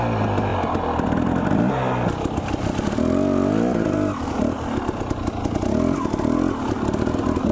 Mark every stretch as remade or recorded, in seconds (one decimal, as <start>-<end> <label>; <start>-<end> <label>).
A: 0.0-7.5 recorded